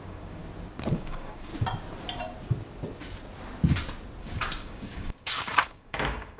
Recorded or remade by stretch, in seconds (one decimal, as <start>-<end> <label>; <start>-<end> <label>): 0.0-0.4 remade; 0.4-0.9 recorded; 0.9-1.5 remade; 1.5-4.2 recorded; 4.2-6.4 remade